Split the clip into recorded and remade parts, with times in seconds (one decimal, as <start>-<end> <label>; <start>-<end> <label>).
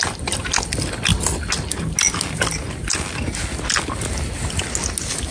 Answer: 0.0-5.3 recorded